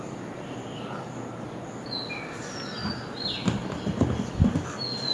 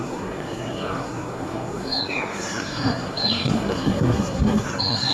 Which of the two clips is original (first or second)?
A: first